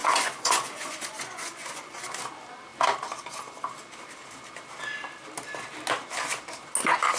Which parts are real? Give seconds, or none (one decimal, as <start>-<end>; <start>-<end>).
2.0-7.2